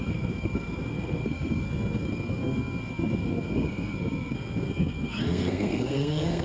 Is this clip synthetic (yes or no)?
yes